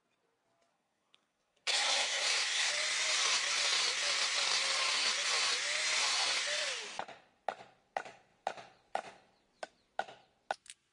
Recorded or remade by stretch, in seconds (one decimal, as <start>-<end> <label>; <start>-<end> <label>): 0.0-0.7 recorded; 0.7-2.7 remade; 2.7-10.9 recorded